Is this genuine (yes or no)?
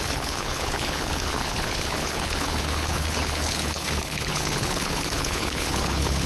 no